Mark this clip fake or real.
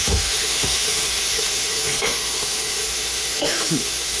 fake